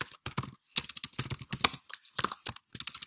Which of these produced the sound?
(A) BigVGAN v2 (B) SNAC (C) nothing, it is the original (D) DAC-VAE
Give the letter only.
C